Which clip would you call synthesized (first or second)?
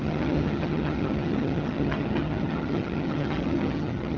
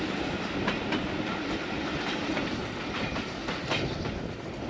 first